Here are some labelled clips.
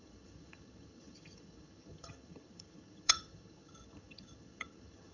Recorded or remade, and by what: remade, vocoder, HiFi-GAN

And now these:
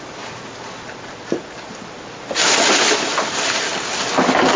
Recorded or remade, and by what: recorded